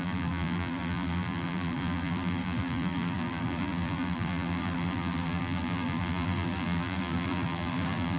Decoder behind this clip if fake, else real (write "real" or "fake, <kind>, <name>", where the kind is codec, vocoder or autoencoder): fake, vocoder, BigVGAN v2